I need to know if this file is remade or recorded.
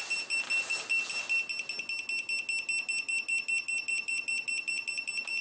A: recorded